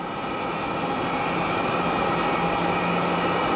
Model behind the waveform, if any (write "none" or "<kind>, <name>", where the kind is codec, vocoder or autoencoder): none